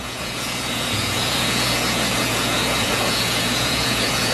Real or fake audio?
fake